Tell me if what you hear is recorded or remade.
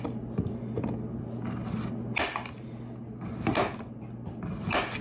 recorded